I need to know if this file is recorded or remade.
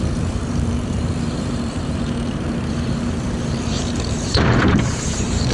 remade